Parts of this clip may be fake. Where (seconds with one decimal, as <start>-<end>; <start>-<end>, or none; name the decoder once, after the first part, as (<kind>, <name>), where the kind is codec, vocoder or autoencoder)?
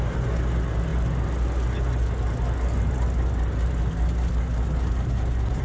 none